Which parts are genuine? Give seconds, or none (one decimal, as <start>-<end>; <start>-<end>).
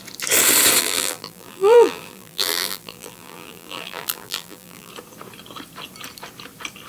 0.0-0.8; 4.9-6.9